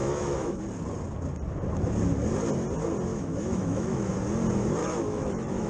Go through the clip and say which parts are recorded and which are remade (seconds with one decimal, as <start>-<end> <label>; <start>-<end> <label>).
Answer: 0.0-0.6 remade; 0.6-3.1 recorded; 3.1-4.1 remade; 4.1-4.8 recorded; 4.8-5.7 remade